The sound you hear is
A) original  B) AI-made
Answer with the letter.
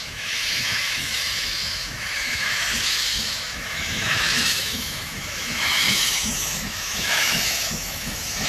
B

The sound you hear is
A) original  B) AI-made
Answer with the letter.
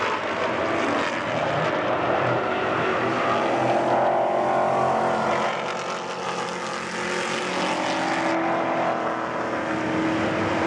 A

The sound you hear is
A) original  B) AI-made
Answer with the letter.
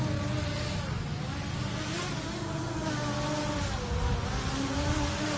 A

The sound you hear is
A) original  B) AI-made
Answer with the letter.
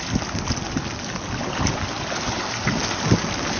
A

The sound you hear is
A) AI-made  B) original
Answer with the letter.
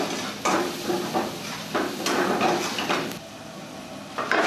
B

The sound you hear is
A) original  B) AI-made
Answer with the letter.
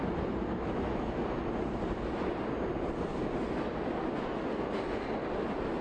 A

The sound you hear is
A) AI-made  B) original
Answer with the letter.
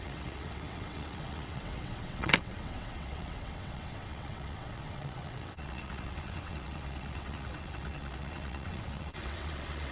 A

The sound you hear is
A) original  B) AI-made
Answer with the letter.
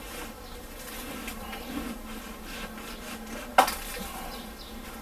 A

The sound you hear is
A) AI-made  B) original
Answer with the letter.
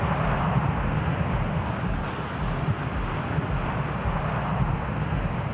B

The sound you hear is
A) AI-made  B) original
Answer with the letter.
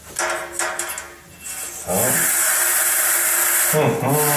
B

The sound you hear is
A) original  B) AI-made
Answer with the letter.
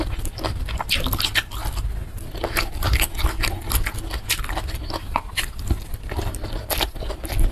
A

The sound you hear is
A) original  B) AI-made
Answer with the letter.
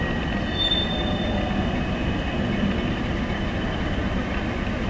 A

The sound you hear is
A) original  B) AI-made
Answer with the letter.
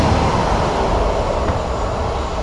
A